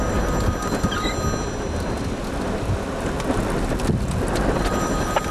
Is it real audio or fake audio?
real